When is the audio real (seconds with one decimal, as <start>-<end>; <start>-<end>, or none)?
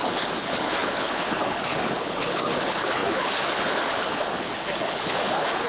none